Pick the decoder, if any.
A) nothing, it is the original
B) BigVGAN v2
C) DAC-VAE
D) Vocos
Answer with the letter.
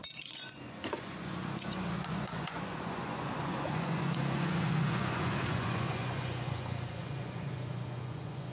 D